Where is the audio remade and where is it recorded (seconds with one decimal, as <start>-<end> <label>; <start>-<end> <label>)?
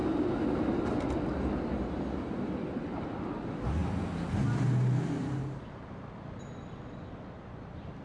0.0-8.0 recorded